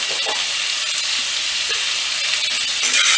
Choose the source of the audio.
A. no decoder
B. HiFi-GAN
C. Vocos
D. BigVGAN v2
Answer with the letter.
A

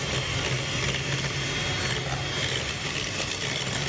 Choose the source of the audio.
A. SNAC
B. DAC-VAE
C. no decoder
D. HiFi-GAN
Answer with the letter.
C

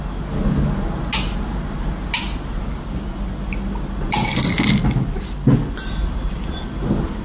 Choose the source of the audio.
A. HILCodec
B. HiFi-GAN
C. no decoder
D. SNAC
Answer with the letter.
C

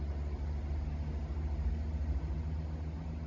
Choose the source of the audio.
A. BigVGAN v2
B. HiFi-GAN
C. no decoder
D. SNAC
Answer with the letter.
C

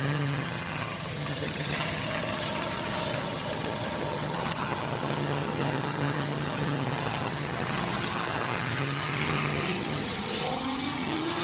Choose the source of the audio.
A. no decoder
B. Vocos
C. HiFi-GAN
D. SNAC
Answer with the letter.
C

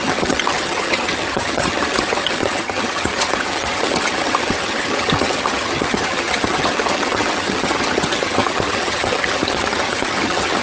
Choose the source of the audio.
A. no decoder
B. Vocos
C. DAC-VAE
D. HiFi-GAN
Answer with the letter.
D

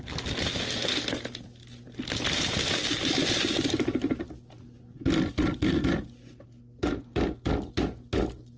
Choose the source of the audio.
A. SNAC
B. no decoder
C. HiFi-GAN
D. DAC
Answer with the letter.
B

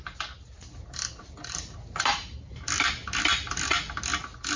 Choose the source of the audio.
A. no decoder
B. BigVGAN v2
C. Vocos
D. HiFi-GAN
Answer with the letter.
A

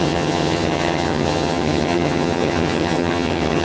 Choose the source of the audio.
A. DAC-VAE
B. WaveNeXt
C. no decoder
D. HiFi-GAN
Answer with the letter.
D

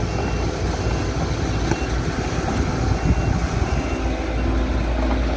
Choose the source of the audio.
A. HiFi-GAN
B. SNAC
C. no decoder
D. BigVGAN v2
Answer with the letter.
C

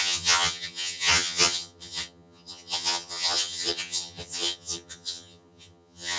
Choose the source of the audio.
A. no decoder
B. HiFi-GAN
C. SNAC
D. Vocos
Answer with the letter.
B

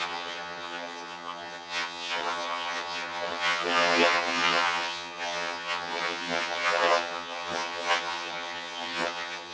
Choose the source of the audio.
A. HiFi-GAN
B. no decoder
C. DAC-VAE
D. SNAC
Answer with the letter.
A